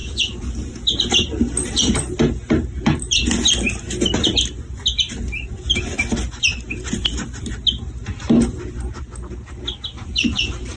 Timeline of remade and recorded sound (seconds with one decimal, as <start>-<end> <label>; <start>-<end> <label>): 0.0-0.5 remade; 0.5-10.8 recorded